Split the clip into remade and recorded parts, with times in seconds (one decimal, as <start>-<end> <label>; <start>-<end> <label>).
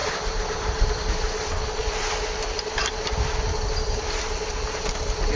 0.0-0.9 remade; 0.9-5.4 recorded